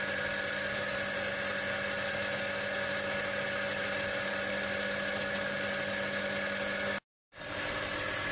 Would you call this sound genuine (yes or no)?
yes